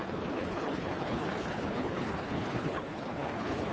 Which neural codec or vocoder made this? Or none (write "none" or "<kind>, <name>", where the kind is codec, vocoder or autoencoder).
codec, HILCodec